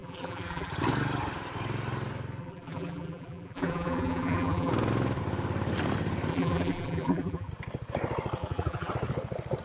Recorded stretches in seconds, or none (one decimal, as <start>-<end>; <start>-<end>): 0.7-2.4; 4.7-6.3; 7.5-8.4; 8.9-9.6